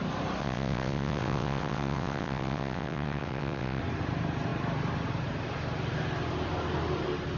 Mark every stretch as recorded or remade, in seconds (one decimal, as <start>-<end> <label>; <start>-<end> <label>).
0.0-0.4 recorded; 0.4-3.8 remade; 3.8-7.4 recorded